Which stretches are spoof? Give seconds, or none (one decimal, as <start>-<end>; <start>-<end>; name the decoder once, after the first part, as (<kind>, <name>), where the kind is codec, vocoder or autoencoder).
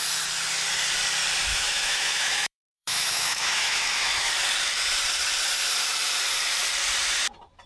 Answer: 1.5-4.3 (autoencoder, DAC-VAE)